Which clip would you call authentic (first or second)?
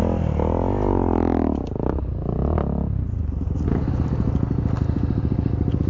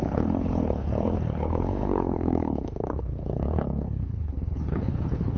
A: first